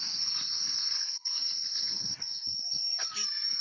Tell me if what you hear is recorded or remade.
remade